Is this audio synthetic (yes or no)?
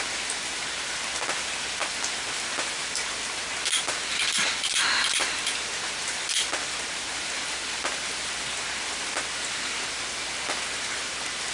no